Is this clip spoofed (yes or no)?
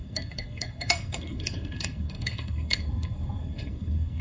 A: yes